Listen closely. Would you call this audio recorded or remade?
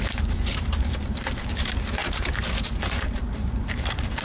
remade